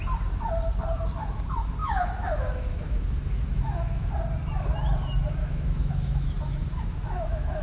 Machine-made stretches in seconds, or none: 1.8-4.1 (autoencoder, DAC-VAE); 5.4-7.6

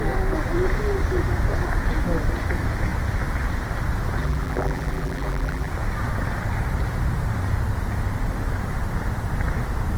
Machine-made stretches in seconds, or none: 4.2-5.7 (vocoder, BigVGAN v2)